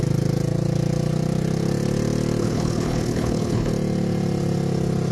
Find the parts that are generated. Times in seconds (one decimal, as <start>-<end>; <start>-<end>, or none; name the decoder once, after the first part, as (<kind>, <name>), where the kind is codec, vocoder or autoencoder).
2.4-3.7 (codec, HILCodec)